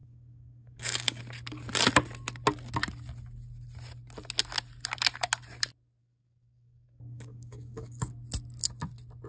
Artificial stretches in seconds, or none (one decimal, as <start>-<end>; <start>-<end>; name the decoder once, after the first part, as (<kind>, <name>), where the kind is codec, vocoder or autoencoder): 0.0-1.2 (codec, DAC); 6.0-8.1